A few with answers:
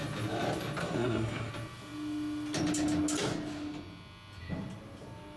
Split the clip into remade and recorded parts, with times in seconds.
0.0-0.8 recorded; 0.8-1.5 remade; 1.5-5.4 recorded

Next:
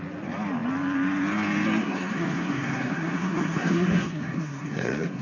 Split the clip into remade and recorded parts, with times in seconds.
0.0-1.8 recorded; 1.8-5.2 remade

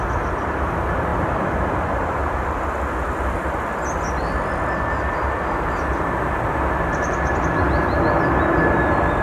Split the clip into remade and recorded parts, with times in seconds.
0.0-9.2 recorded

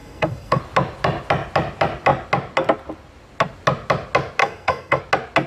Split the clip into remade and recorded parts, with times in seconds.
0.0-0.6 remade; 0.6-4.4 recorded; 4.4-5.0 remade; 5.0-5.5 recorded

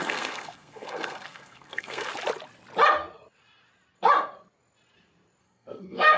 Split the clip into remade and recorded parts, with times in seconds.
0.0-2.1 remade; 2.1-5.4 recorded; 5.4-6.2 remade

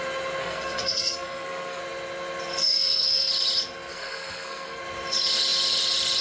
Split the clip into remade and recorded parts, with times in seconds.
0.0-0.4 recorded; 0.4-1.8 remade; 1.8-2.6 recorded; 2.6-3.3 remade; 3.3-3.9 recorded; 3.9-4.8 remade; 4.8-6.2 recorded

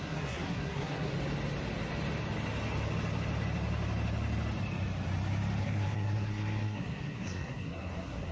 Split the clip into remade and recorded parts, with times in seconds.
0.0-1.1 remade; 1.1-5.6 recorded; 5.6-8.3 remade